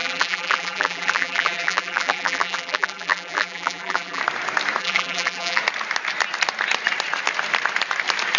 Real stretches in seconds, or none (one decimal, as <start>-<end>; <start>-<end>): 4.2-4.8; 5.6-8.4